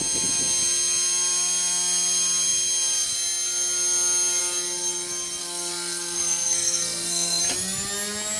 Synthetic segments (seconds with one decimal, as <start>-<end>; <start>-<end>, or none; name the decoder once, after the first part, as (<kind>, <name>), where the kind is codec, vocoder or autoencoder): 5.4-7.4 (codec, SNAC)